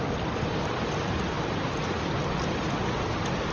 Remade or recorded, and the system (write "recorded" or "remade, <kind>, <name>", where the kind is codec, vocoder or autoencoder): recorded